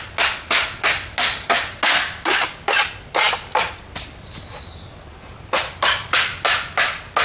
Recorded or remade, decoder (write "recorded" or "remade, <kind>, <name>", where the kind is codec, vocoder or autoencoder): recorded